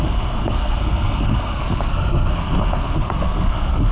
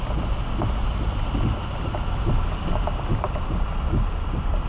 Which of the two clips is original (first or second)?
second